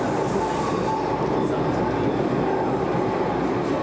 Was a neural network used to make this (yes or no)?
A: no